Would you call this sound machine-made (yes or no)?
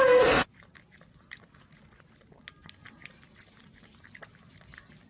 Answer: no